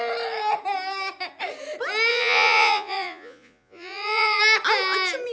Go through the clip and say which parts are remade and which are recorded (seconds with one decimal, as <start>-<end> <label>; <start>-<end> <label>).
0.0-2.1 recorded; 2.1-4.4 remade; 4.4-5.3 recorded